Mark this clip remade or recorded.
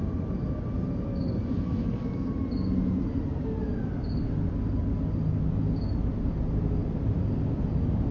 recorded